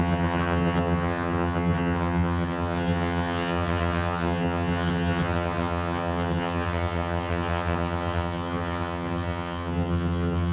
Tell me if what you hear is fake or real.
fake